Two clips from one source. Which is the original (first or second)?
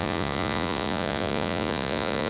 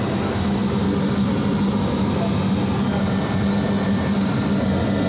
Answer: second